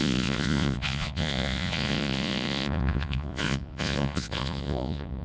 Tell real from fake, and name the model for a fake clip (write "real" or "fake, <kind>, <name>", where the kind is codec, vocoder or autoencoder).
fake, vocoder, Vocos